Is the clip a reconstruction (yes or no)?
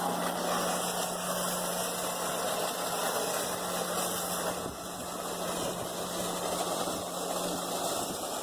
no